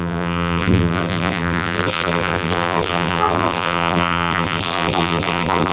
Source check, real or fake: fake